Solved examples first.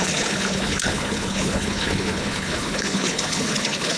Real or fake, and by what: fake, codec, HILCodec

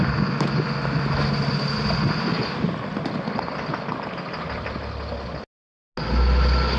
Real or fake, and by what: real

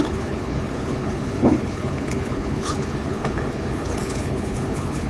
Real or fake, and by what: fake, codec, HILCodec